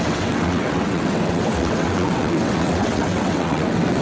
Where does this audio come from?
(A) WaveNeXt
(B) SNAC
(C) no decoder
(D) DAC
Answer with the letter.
A